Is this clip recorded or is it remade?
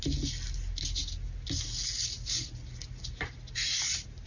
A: recorded